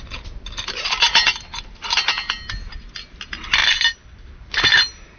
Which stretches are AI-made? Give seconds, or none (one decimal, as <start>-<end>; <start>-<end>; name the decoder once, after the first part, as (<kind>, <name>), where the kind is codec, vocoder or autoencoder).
3.6-4.8 (vocoder, BigVGAN v2)